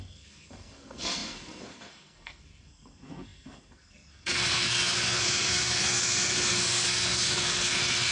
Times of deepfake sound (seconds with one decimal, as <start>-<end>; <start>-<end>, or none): 0.0-8.1